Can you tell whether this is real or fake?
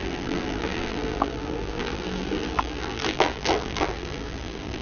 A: fake